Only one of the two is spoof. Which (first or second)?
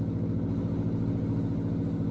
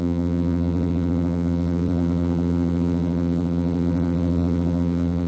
second